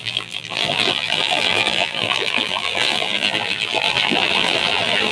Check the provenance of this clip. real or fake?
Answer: fake